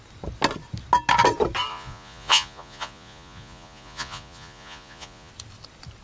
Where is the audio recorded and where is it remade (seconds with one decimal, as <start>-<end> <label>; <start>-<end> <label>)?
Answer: 0.0-1.7 recorded; 1.7-5.3 remade; 5.3-6.0 recorded